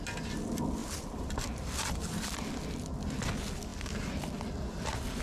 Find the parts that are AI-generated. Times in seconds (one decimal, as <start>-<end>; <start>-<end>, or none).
0.8-2.5